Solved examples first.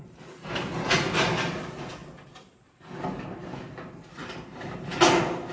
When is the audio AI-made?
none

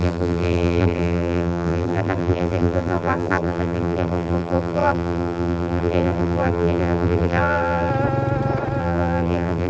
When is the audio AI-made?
0.0-7.9 (vocoder, BigVGAN v2); 8.8-9.7

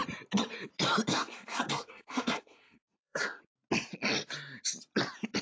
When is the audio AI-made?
1.1-3.4 (codec, SNAC)

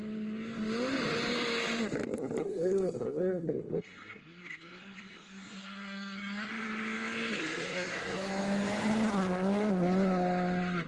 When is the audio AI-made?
2.4-6.5 (codec, SNAC); 7.4-8.3

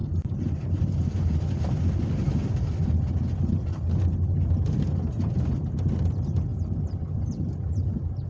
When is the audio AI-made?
6.5-7.7 (vocoder, BigVGAN v2)

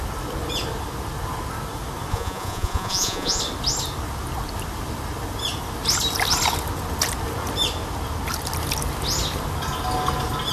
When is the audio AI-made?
2.1-3.4 (vocoder, Vocos)